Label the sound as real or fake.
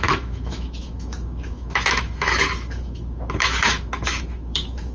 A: fake